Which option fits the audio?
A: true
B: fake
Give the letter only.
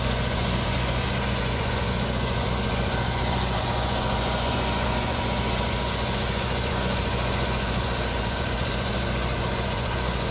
B